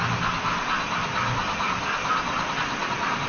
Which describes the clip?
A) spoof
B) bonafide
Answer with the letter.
B